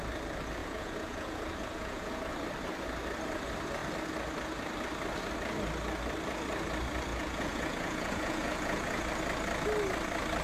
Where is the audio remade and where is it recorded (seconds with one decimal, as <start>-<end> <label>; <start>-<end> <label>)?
0.0-0.6 recorded; 0.6-2.1 remade; 2.1-7.1 recorded; 7.1-9.1 remade; 9.1-10.4 recorded